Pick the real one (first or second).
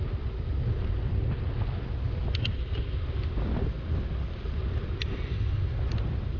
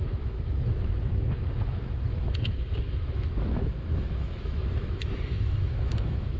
first